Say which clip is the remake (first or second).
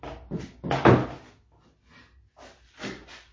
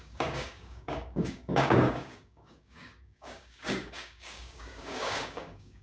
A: second